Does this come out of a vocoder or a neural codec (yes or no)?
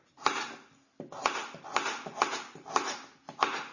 no